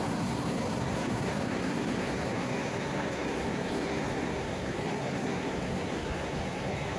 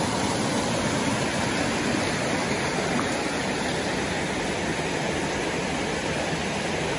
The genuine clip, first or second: second